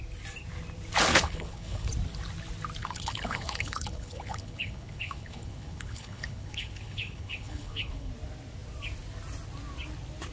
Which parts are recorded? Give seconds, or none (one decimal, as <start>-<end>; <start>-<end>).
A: 0.0-1.1; 1.9-2.8; 8.1-10.3